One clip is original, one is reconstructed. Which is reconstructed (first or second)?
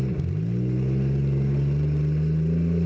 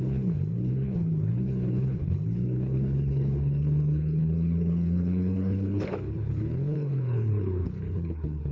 second